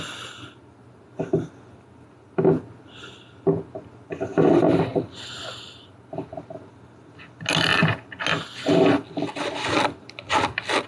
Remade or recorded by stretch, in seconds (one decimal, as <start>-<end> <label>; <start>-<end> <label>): 0.0-10.9 recorded